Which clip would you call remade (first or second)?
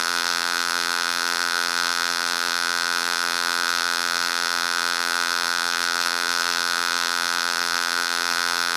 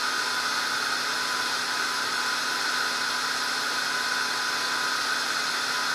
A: first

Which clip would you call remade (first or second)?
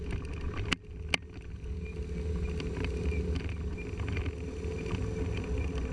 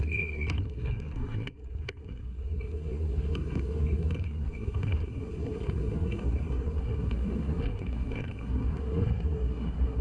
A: second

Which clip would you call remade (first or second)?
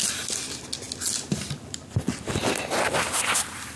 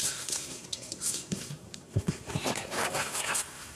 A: second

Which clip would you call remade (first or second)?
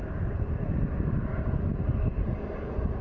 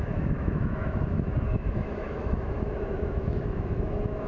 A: second